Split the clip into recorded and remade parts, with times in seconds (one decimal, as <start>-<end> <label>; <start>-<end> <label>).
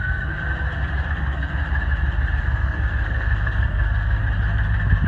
0.0-0.4 remade; 0.4-1.1 recorded; 1.1-1.6 remade; 1.6-2.4 recorded; 2.4-4.2 remade; 4.2-5.1 recorded